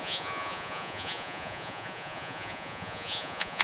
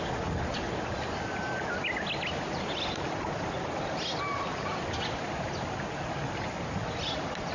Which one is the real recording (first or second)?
second